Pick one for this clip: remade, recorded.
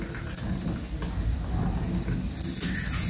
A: recorded